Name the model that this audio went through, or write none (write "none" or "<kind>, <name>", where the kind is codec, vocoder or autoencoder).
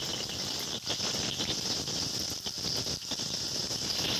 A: none